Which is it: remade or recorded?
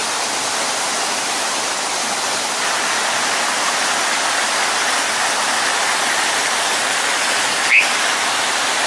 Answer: recorded